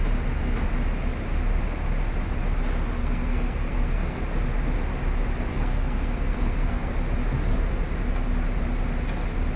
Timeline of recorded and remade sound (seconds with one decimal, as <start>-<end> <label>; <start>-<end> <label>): 0.0-3.0 recorded; 3.0-4.2 remade; 4.2-5.5 recorded; 5.5-6.9 remade; 6.9-9.6 recorded